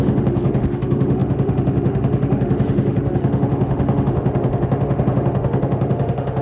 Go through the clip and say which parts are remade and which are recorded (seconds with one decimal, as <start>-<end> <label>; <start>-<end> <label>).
0.0-6.4 remade